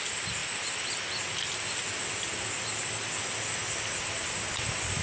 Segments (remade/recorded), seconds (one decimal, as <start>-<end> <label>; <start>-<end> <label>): 0.0-5.0 recorded